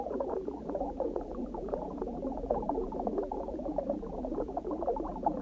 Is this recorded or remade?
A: remade